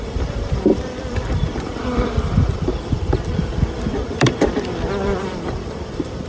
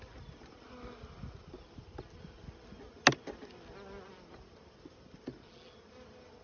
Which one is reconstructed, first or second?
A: first